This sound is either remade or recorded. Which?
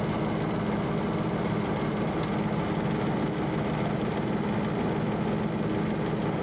recorded